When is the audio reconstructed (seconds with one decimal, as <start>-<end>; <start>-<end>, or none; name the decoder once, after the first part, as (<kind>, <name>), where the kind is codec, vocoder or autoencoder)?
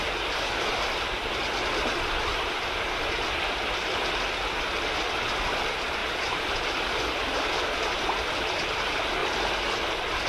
none